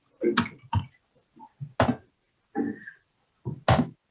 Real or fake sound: real